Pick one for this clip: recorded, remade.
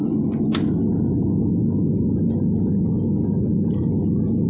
recorded